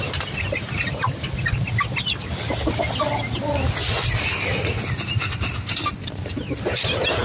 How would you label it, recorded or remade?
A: recorded